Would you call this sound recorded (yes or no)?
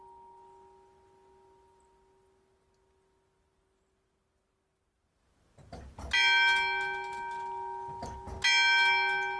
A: yes